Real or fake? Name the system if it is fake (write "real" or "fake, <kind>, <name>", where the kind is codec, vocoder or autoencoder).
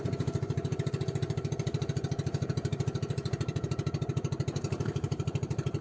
fake, vocoder, BigVGAN v2